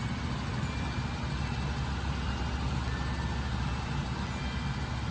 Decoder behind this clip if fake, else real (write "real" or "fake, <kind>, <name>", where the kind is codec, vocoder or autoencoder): real